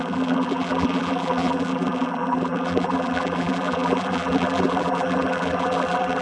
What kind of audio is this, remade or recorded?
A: remade